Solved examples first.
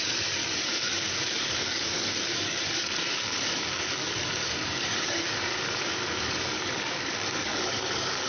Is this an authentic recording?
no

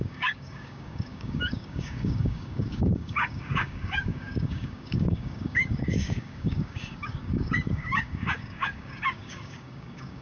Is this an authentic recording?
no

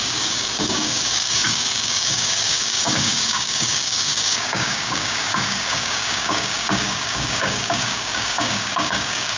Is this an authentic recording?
no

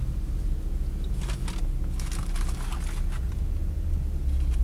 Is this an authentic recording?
yes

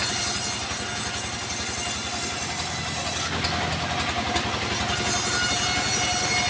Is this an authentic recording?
yes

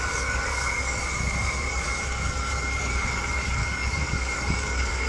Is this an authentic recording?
no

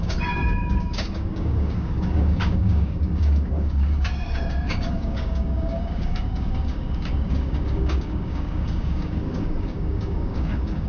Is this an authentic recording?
no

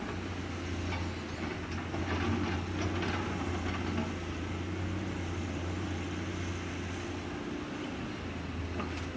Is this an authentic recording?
yes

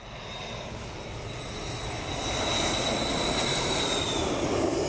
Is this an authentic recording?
yes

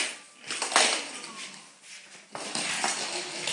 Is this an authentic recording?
yes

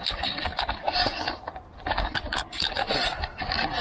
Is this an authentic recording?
yes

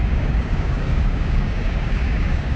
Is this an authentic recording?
no